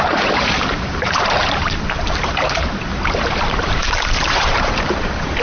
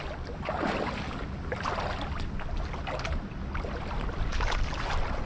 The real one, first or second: second